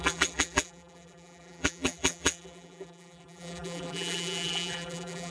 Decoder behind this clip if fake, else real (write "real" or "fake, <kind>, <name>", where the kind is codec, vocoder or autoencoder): fake, vocoder, BigVGAN v2